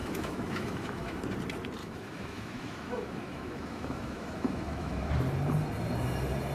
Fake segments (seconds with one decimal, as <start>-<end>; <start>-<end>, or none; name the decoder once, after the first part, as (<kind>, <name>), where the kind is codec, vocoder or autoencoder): 0.0-1.2 (autoencoder, DAC-VAE); 1.8-5.1